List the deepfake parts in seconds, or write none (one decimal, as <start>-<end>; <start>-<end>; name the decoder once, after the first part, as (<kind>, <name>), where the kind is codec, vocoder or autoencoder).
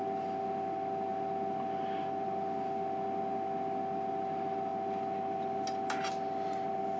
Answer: none